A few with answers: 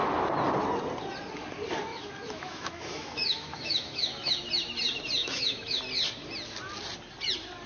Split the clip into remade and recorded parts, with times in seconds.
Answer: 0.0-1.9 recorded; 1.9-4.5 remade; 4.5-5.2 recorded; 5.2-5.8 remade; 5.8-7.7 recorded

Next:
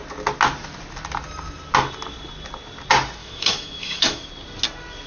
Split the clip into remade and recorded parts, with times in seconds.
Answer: 0.0-3.2 recorded; 3.2-4.3 remade; 4.3-5.1 recorded

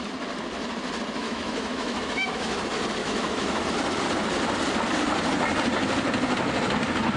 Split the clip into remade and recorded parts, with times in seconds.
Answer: 0.0-1.2 recorded; 1.2-2.6 remade; 2.6-3.0 recorded; 3.0-3.6 remade; 3.6-7.2 recorded

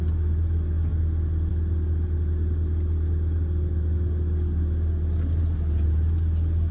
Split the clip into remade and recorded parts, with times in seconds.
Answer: 0.0-6.7 recorded

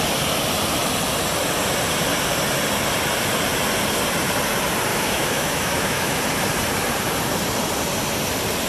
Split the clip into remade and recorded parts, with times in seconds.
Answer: 0.0-4.9 recorded; 4.9-6.2 remade; 6.2-8.7 recorded

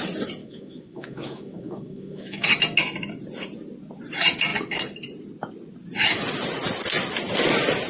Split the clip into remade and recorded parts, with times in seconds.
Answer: 0.0-0.4 recorded; 0.4-2.5 remade; 2.5-7.9 recorded